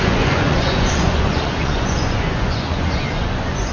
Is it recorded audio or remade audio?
remade